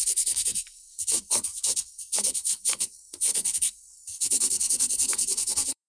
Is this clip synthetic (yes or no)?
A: yes